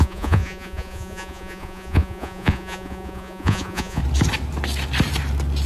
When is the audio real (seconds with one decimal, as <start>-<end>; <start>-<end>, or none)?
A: 4.0-5.7